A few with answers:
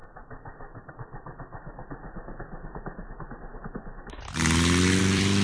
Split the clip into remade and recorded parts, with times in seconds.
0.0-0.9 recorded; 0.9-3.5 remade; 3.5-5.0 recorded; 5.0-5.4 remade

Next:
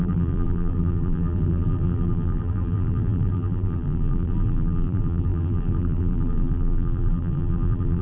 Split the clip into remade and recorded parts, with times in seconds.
0.0-8.0 remade

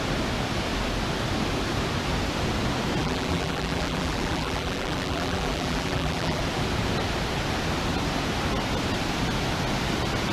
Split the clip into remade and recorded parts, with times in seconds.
0.0-3.0 recorded; 3.0-6.4 remade; 6.4-10.3 recorded

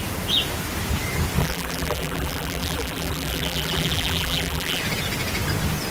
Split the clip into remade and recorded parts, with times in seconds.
0.0-1.4 recorded; 1.4-4.8 remade; 4.8-5.9 recorded

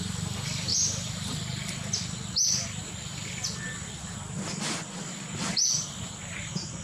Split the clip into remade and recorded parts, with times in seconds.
0.0-6.8 recorded

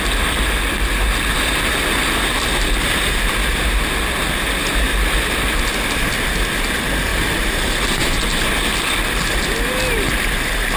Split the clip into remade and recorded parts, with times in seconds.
0.0-4.9 recorded; 4.9-5.6 remade; 5.6-7.1 recorded; 7.1-8.1 remade; 8.1-10.8 recorded

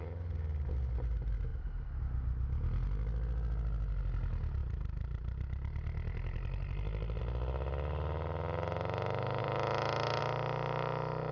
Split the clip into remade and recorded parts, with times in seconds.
0.0-1.5 recorded; 1.5-2.0 remade; 2.0-4.6 recorded; 4.6-7.2 remade; 7.2-9.4 recorded; 9.4-10.2 remade; 10.2-11.3 recorded